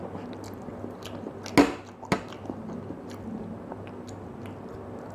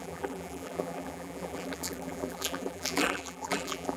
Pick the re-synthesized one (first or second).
second